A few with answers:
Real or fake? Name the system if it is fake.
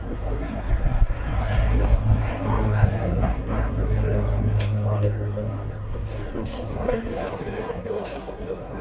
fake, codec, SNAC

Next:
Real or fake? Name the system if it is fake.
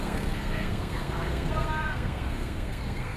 fake, codec, SNAC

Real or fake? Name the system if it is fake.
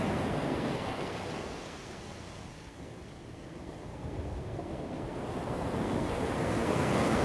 fake, codec, SNAC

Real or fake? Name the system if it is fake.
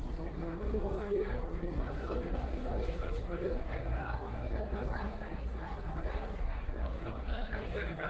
fake, codec, SNAC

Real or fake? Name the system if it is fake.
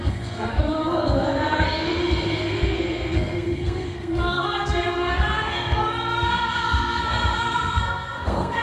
fake, codec, SNAC